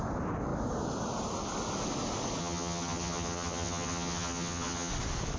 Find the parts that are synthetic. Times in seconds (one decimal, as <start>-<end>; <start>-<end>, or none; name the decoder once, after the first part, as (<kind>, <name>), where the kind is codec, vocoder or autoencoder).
2.4-4.9 (vocoder, HiFi-GAN)

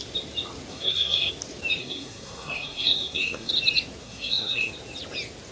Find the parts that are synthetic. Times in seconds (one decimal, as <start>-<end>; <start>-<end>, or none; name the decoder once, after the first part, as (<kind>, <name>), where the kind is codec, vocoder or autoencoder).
0.7-1.3 (codec, SNAC); 1.8-3.5; 4.0-4.7

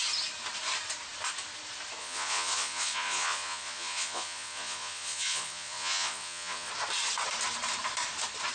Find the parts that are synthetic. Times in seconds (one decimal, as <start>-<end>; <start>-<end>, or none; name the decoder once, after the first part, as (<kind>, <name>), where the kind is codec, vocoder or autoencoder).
2.0-6.7 (vocoder, Vocos)

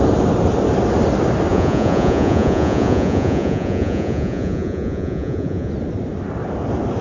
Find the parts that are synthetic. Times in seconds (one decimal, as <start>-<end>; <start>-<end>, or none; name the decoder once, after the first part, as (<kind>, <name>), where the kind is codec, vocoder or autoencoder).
1.5-5.7 (vocoder, Vocos)